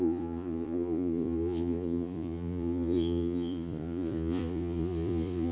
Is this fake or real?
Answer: fake